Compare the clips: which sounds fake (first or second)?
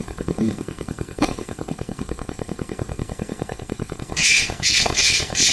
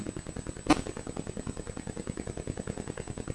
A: first